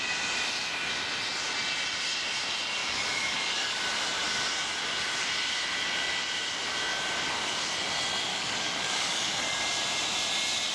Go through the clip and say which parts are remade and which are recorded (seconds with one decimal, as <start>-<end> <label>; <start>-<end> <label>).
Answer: 0.0-2.8 recorded; 2.8-3.8 remade; 3.8-8.3 recorded; 8.3-9.6 remade; 9.6-10.7 recorded